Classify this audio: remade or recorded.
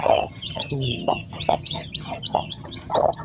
remade